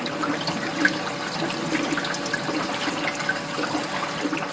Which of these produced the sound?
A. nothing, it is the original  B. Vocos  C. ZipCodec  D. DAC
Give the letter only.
A